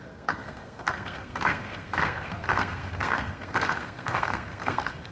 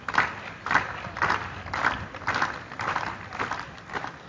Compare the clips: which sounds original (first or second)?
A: second